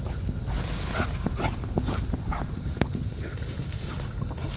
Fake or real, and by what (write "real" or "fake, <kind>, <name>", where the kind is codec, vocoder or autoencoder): real